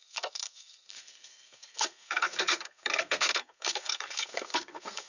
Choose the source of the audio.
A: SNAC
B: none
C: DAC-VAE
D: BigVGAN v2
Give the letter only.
A